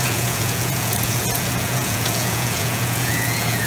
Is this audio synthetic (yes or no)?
yes